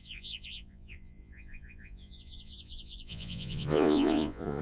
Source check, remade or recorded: remade